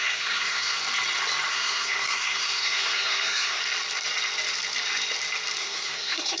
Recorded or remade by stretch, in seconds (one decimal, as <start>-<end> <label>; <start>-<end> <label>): 0.0-0.8 remade; 0.8-1.5 recorded; 1.5-3.6 remade; 3.6-5.6 recorded; 5.6-6.4 remade